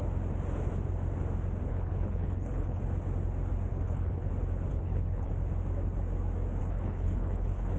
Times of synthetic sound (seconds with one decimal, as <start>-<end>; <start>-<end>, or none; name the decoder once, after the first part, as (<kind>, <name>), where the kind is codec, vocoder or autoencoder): 1.7-2.8 (codec, HILCodec); 3.7-4.3; 4.7-5.3; 6.6-7.8